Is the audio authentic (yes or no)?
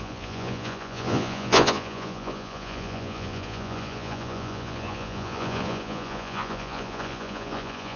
no